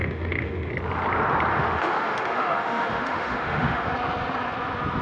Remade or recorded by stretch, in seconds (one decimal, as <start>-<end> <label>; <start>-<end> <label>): 0.0-0.7 remade; 0.7-1.5 recorded; 1.5-3.9 remade; 3.9-5.0 recorded

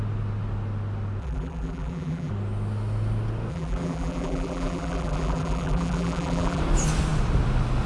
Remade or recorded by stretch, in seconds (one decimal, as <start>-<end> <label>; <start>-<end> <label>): 0.0-1.2 recorded; 1.2-2.3 remade; 2.3-3.5 recorded; 3.5-6.6 remade; 6.6-7.9 recorded